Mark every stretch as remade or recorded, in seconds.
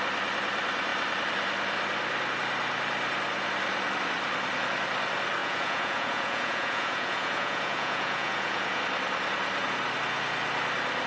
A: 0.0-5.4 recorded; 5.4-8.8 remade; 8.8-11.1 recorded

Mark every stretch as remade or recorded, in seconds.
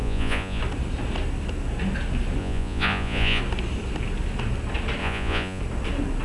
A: 0.0-0.6 remade; 0.6-2.4 recorded; 2.4-3.4 remade; 3.4-5.0 recorded; 5.0-5.6 remade; 5.6-6.2 recorded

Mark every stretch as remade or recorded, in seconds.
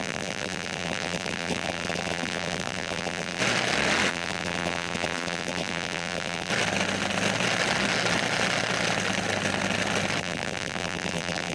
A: 0.0-3.4 remade; 3.4-4.1 recorded; 4.1-6.5 remade; 6.5-10.2 recorded; 10.2-11.5 remade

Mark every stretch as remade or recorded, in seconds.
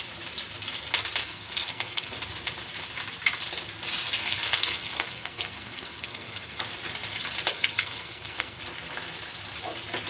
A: 0.0-1.2 recorded; 1.2-2.1 remade; 2.1-4.2 recorded; 4.2-6.6 remade; 6.6-7.5 recorded; 7.5-8.6 remade; 8.6-10.1 recorded